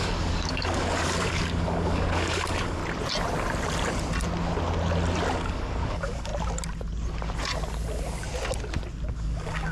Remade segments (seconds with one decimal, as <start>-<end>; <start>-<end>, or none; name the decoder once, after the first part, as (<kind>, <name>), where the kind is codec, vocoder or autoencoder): 0.0-2.8 (codec, DAC); 5.3-6.3; 9.1-9.7